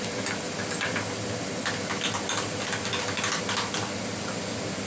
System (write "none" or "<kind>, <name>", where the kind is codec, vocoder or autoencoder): none